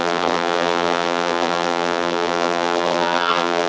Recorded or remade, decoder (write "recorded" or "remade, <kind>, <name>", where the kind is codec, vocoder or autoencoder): remade, vocoder, BigVGAN v2